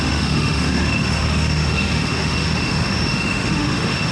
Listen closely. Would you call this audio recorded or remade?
remade